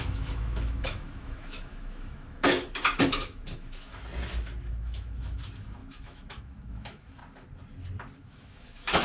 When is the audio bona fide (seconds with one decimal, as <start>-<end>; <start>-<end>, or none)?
3.9-4.7; 7.2-8.2